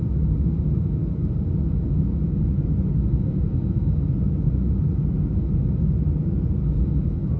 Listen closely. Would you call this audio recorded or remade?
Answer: recorded